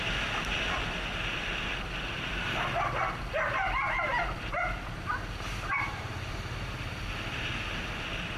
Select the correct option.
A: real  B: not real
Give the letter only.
A